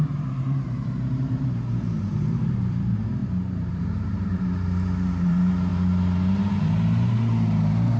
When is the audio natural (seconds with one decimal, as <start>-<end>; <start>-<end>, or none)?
5.7-8.0